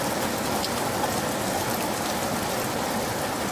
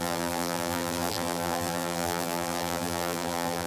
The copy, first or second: second